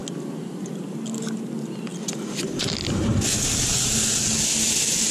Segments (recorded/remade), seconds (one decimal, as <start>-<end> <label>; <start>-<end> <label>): 0.0-5.1 recorded